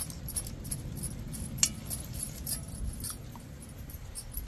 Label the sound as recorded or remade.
recorded